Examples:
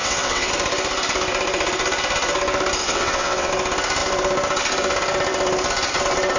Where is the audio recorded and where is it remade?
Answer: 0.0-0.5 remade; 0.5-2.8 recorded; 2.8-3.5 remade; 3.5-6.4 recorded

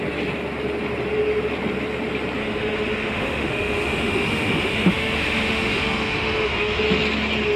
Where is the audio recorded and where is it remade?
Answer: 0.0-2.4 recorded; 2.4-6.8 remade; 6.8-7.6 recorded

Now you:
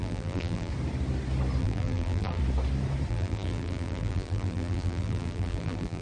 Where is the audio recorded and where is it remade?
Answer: 0.0-0.7 remade; 0.7-1.6 recorded; 1.6-2.4 remade; 2.4-3.1 recorded; 3.1-6.0 remade

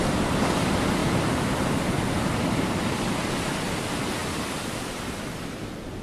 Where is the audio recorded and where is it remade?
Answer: 0.0-4.2 recorded; 4.2-5.6 remade; 5.6-6.0 recorded